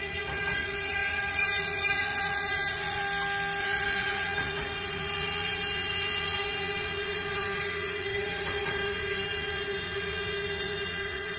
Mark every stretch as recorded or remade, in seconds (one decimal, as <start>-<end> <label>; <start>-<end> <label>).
0.0-3.0 remade; 3.0-3.6 recorded; 3.6-11.4 remade